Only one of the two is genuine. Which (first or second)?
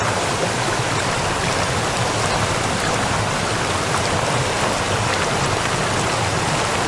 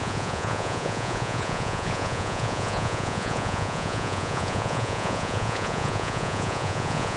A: first